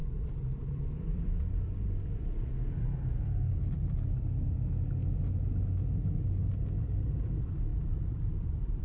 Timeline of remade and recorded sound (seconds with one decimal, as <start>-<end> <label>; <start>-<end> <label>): 0.0-0.6 recorded; 0.6-5.0 remade; 5.0-6.8 recorded; 6.8-8.8 remade